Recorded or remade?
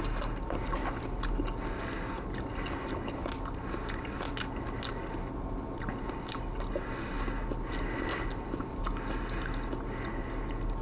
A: recorded